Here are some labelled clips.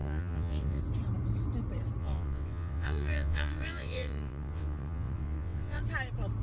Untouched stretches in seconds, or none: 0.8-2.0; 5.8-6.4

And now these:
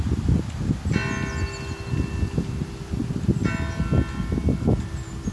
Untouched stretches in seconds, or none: 0.0-5.3